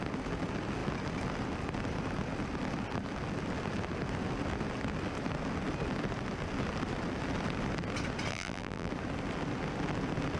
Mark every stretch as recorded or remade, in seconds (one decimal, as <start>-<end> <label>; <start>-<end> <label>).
0.0-8.3 recorded; 8.3-8.9 remade; 8.9-10.4 recorded